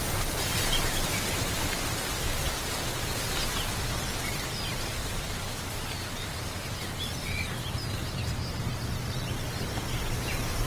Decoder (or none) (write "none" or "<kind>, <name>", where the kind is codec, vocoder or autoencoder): none